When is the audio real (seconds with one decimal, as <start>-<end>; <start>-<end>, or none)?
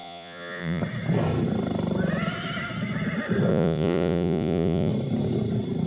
0.8-3.5; 4.9-5.9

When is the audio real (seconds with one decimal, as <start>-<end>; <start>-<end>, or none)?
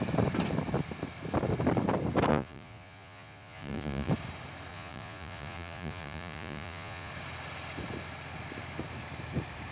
0.0-2.3; 4.1-4.7; 7.1-9.7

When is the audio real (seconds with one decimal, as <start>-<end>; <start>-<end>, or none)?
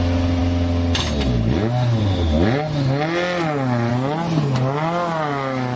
0.0-5.8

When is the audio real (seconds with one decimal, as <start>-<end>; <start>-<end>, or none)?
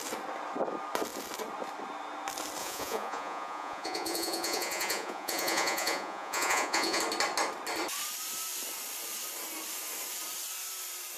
0.0-2.6; 7.0-11.2